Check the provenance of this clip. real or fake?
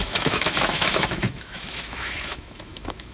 fake